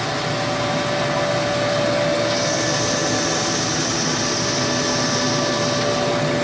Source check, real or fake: real